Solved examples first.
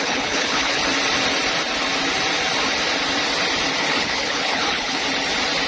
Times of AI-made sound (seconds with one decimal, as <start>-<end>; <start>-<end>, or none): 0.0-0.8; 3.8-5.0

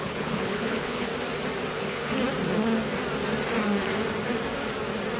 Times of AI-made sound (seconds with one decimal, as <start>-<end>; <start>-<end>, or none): 0.0-1.1; 1.7-2.1

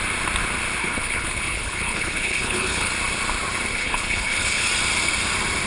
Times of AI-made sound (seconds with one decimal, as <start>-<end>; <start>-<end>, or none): 0.8-2.9; 3.7-4.7

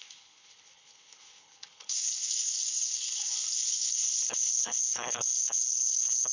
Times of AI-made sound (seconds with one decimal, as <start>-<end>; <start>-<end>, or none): 0.0-6.3